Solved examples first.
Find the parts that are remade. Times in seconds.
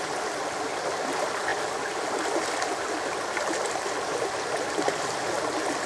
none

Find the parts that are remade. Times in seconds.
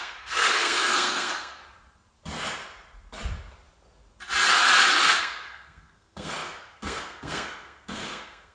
0.0-1.6 (codec, SNAC); 5.2-8.5